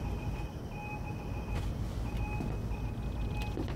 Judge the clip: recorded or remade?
recorded